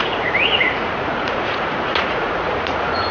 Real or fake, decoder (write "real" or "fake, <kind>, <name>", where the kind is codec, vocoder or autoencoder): fake, vocoder, Vocos